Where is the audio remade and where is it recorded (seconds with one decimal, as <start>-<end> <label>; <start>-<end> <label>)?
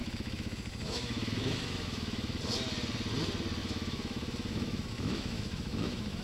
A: 0.0-2.4 remade; 2.4-3.6 recorded; 3.6-6.2 remade